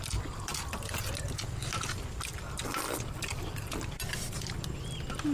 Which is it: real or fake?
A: real